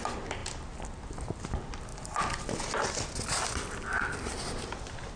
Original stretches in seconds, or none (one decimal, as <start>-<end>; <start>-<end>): 0.0-5.2